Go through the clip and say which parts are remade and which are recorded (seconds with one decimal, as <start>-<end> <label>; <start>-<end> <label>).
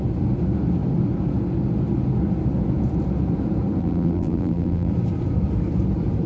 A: 0.0-3.8 recorded; 3.8-4.9 remade; 4.9-6.3 recorded